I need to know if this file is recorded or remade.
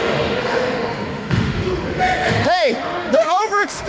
remade